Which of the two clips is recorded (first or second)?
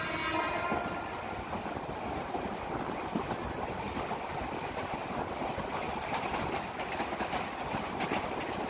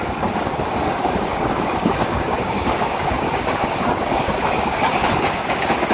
first